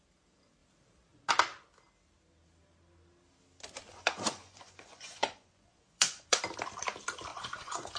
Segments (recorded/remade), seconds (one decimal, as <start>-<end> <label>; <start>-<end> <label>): 0.0-3.9 recorded; 3.9-6.4 remade; 6.4-7.3 recorded; 7.3-8.0 remade